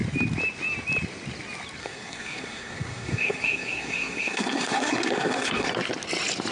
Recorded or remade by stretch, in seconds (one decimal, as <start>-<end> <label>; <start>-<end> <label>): 0.0-1.8 recorded; 1.8-5.7 remade; 5.7-6.5 recorded